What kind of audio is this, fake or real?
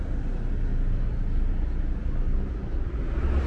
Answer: real